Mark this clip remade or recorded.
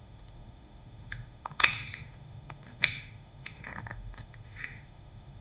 remade